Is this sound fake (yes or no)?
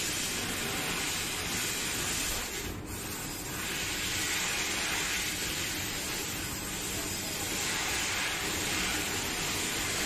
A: no